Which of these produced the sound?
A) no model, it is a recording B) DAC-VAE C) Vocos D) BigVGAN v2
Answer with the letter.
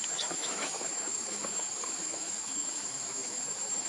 B